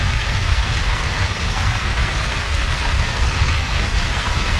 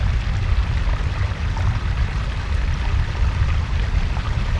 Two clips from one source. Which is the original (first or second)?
second